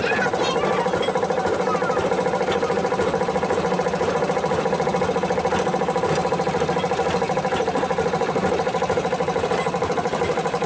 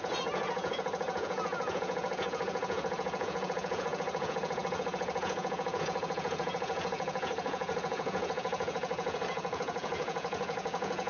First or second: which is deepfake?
second